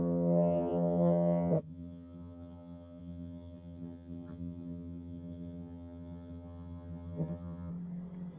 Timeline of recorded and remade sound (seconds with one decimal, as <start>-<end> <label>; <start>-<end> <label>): 0.0-7.7 remade; 7.7-8.4 recorded